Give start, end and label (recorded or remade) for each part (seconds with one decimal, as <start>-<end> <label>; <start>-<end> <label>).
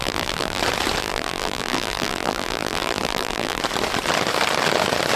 0.0-0.6 remade; 0.6-1.0 recorded; 1.0-3.6 remade; 3.6-5.2 recorded